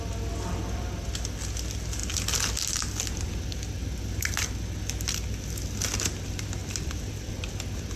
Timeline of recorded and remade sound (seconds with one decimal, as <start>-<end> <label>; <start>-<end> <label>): 0.0-8.0 recorded

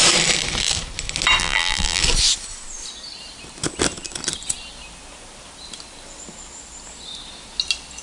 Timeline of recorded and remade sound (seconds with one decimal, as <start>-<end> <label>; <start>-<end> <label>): 0.0-1.4 recorded; 1.4-2.0 remade; 2.0-8.0 recorded